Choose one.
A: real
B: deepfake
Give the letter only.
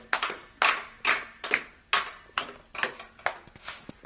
A